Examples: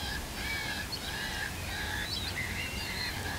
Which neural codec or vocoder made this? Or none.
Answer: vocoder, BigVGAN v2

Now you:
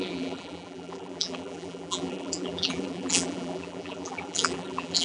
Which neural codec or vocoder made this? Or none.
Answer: vocoder, BigVGAN v2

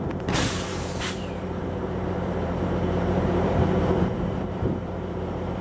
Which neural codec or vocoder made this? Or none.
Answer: vocoder, BigVGAN v2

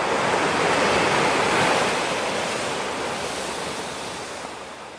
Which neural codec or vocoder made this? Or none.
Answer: none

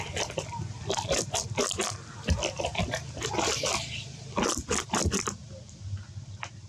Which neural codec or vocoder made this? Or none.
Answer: vocoder, BigVGAN v2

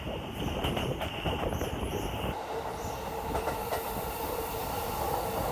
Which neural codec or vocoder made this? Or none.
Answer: vocoder, BigVGAN v2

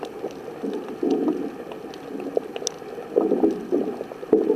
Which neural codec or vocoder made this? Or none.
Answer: none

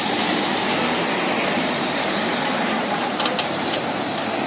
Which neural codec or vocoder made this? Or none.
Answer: vocoder, BigVGAN v2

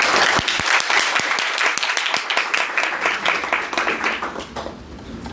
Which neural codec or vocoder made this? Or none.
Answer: none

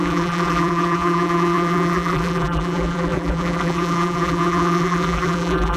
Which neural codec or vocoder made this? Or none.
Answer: vocoder, BigVGAN v2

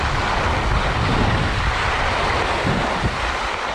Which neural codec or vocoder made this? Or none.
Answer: none